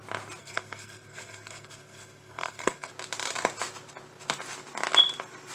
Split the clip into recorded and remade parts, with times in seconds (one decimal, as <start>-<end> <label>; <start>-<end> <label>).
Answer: 0.0-0.4 recorded; 0.4-2.9 remade; 2.9-5.5 recorded